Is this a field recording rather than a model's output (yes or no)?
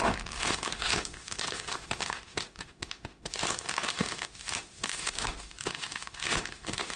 no